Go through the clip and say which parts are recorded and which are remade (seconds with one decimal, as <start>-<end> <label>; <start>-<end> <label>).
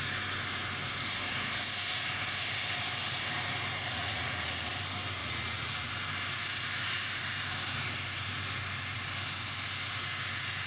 0.0-3.9 recorded; 3.9-4.7 remade; 4.7-5.2 recorded; 5.2-5.9 remade; 5.9-10.7 recorded